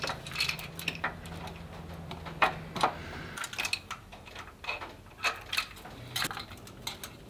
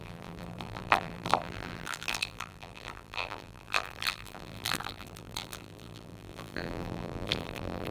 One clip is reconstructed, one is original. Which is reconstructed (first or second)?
second